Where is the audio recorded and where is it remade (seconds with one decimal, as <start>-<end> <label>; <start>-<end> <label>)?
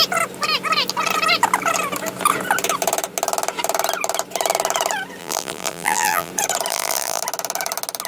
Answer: 0.0-5.2 recorded; 5.2-6.3 remade; 6.3-6.7 recorded; 6.7-7.2 remade; 7.2-8.1 recorded